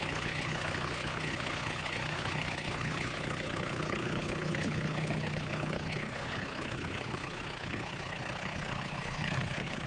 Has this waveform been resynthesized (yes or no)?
yes